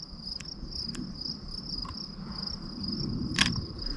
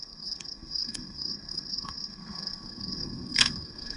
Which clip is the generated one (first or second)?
second